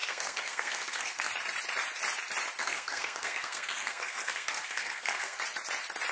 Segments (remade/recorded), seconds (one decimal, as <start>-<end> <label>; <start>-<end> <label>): 0.0-1.3 remade; 1.3-2.6 recorded; 2.6-5.4 remade; 5.4-6.1 recorded